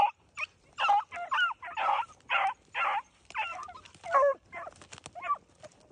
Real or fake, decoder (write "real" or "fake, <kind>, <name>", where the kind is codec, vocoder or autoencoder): real